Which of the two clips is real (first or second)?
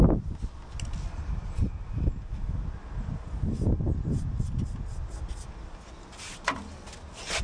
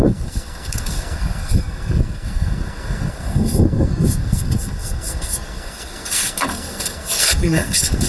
first